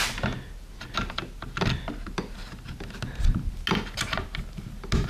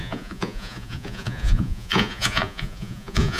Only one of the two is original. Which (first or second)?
first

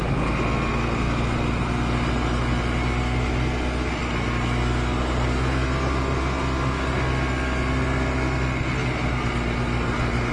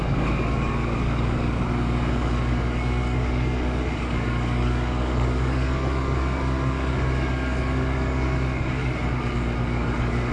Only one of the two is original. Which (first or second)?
first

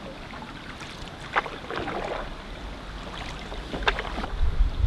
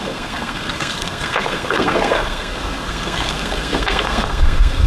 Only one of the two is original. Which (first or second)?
first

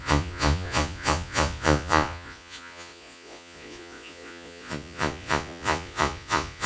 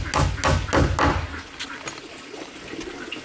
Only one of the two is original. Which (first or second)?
second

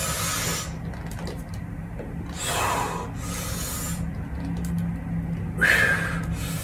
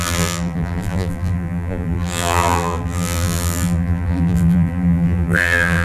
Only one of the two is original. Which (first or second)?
first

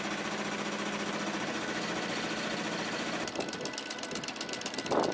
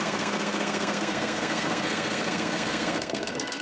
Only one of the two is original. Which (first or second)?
first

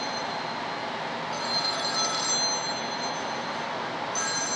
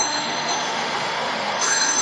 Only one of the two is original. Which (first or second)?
first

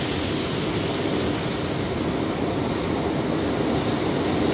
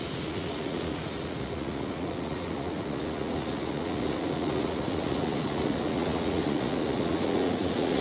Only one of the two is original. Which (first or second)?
first